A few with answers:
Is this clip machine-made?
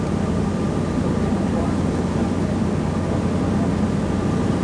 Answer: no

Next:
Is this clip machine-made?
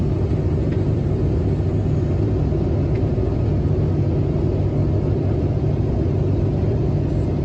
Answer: no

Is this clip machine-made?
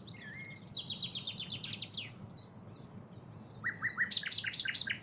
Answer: no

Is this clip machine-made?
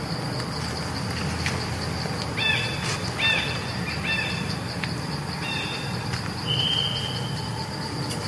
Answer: no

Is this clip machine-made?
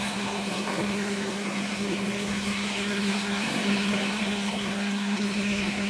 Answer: yes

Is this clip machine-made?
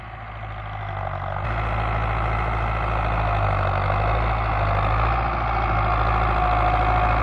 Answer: no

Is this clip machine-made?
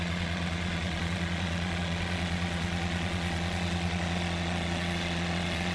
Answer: yes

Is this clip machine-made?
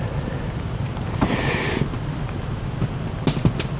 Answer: no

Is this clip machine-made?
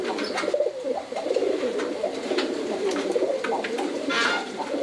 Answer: yes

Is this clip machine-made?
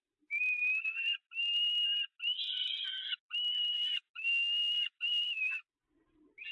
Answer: no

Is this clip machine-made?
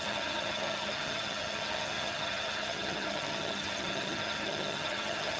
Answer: yes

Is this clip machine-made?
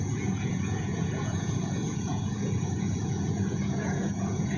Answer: yes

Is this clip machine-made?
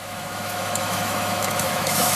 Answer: yes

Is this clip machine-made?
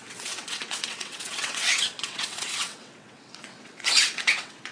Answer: yes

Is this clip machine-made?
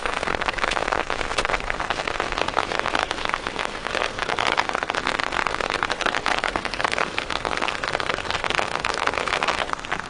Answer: yes